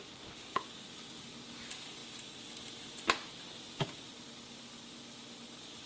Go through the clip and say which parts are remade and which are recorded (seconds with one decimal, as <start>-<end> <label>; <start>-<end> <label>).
0.0-5.9 recorded